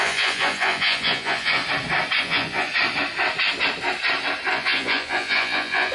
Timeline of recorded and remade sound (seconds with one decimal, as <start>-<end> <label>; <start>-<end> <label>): 0.0-1.6 remade; 1.6-2.2 recorded; 2.2-2.7 remade; 2.7-4.5 recorded; 4.5-5.9 remade